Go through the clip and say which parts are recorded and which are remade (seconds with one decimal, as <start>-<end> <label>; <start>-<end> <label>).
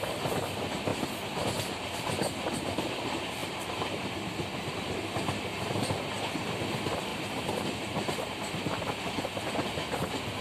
0.0-3.4 recorded; 3.4-4.1 remade; 4.1-4.5 recorded; 4.5-5.0 remade; 5.0-7.1 recorded; 7.1-9.2 remade; 9.2-10.4 recorded